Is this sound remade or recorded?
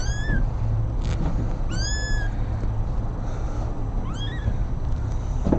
recorded